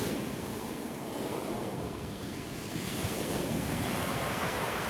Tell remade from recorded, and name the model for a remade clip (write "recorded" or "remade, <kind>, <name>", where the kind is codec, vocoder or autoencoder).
remade, codec, SNAC